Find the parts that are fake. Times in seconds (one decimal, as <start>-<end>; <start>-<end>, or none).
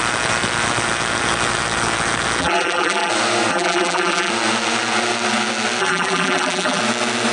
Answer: 2.4-3.1; 3.5-4.3; 5.8-6.8